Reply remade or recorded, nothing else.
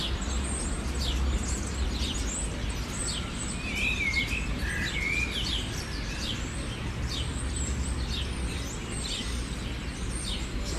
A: recorded